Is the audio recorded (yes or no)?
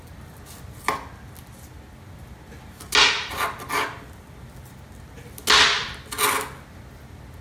yes